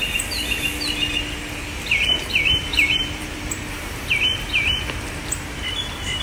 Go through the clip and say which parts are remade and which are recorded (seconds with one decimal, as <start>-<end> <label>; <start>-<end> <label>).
0.0-2.7 recorded; 2.7-4.1 remade; 4.1-6.2 recorded